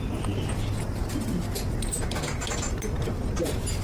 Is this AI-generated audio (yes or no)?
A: no